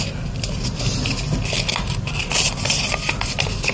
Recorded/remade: recorded